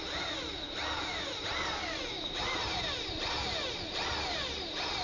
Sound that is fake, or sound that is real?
real